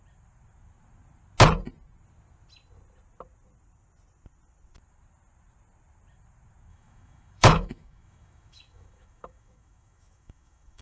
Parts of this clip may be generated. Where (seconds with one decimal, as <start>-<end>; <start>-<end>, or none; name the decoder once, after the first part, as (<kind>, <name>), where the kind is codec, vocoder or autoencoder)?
6.7-10.8 (autoencoder, DAC-VAE)